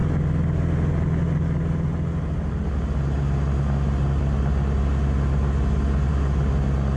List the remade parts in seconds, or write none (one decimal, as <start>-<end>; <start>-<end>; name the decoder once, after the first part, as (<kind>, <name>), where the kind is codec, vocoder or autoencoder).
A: none